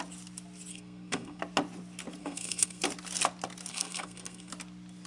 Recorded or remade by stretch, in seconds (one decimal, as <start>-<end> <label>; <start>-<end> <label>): 0.0-0.7 recorded; 0.7-1.4 remade; 1.4-2.2 recorded; 2.2-2.8 remade; 2.8-3.7 recorded; 3.7-4.5 remade; 4.5-5.1 recorded